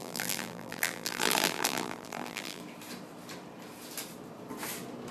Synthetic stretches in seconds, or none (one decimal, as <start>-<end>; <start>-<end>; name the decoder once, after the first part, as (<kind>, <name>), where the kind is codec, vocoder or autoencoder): 0.0-2.6 (vocoder, BigVGAN v2)